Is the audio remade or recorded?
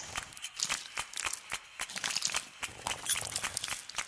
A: recorded